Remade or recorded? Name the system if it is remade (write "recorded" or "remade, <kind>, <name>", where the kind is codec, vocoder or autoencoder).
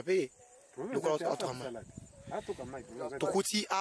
recorded